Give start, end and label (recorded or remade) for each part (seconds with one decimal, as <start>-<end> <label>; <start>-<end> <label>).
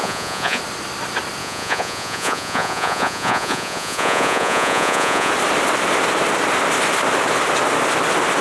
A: 0.0-0.6 remade; 0.6-1.4 recorded; 1.4-5.3 remade; 5.3-8.4 recorded